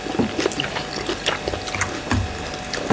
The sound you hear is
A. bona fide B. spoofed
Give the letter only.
A